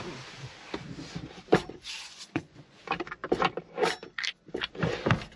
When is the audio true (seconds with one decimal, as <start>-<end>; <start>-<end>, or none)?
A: 0.0-1.5; 2.8-5.4